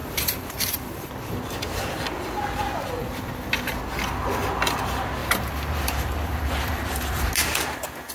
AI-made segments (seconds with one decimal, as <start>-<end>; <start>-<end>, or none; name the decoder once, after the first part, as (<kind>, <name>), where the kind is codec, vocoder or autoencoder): 0.0-1.4 (vocoder, BigVGAN v2); 3.0-3.8; 5.2-7.3